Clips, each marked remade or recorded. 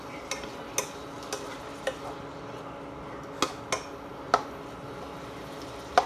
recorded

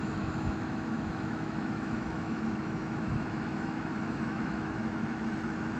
remade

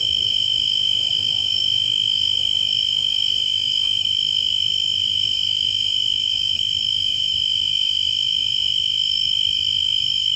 remade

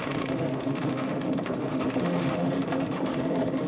remade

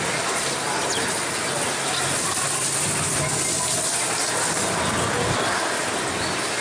recorded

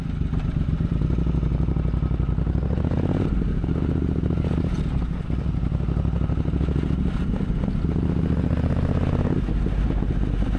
recorded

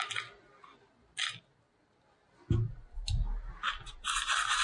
recorded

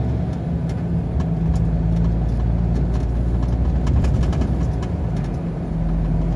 recorded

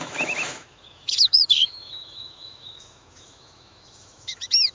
remade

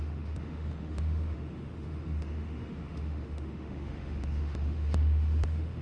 remade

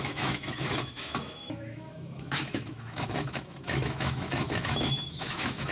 remade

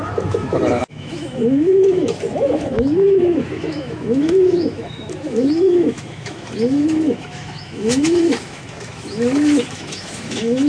remade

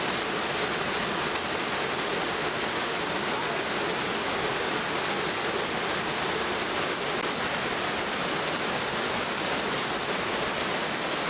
recorded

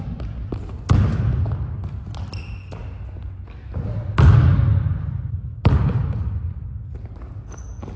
recorded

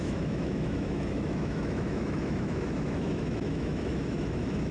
remade